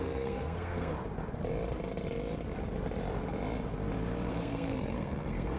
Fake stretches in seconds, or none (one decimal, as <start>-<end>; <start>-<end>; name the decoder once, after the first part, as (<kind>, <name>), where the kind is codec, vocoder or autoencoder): 0.0-0.9 (codec, SNAC); 4.3-5.6